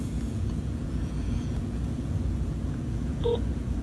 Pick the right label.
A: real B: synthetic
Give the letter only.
B